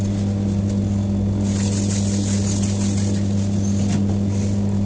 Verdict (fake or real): real